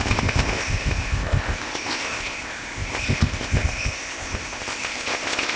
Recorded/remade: remade